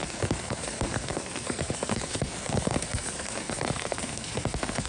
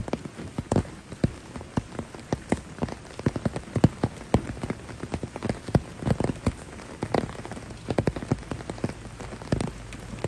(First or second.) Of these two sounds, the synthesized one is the first